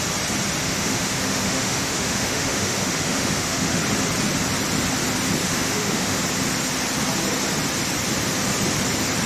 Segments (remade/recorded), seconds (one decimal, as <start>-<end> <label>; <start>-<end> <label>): 0.0-0.6 recorded; 0.6-3.8 remade; 3.8-5.4 recorded; 5.4-6.2 remade; 6.2-9.3 recorded